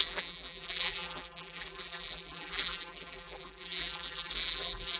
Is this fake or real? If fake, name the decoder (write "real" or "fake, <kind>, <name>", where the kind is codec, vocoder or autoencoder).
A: fake, vocoder, BigVGAN v2